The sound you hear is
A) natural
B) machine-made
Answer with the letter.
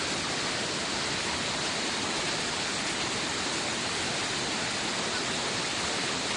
A